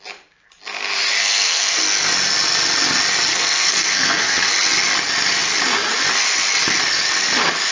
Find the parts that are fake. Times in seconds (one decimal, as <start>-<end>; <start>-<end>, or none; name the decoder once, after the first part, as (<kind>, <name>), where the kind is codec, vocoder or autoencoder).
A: 1.2-1.8 (codec, SNAC); 3.3-4.5

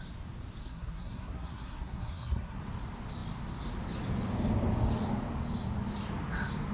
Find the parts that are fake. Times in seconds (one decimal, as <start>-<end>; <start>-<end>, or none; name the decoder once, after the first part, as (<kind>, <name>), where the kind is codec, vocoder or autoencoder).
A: 0.6-2.6 (codec, SNAC)

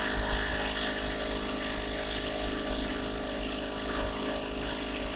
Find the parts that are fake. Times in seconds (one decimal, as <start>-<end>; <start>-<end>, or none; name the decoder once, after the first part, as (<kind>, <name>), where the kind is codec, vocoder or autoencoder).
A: none

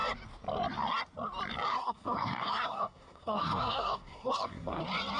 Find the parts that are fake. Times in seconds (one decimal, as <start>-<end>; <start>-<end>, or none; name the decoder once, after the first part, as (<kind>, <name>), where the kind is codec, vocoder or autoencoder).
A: 1.7-4.8 (codec, SNAC)

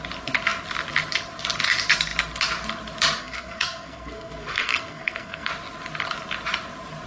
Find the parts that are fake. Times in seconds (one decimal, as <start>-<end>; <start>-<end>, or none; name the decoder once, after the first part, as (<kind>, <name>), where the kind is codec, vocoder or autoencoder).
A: 3.2-5.5 (codec, SNAC)

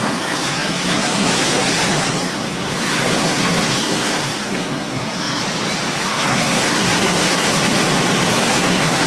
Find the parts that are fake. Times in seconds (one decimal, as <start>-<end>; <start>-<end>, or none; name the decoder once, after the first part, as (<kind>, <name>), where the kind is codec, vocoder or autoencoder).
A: 0.0-5.4 (codec, SNAC); 6.0-7.6; 8.3-9.1

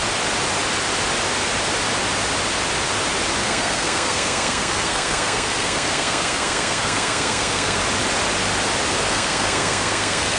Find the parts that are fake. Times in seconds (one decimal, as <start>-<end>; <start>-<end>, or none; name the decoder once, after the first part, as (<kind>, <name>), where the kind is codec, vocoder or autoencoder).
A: 3.4-7.8 (codec, SNAC); 9.1-10.4